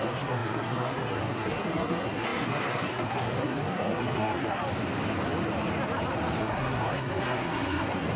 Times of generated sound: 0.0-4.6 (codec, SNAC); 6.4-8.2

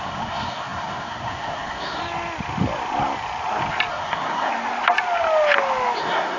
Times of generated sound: 0.0-2.0 (codec, SNAC); 3.9-4.5; 6.0-6.4

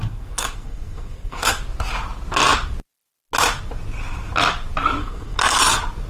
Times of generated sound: 0.0-1.6 (codec, SNAC); 5.0-5.6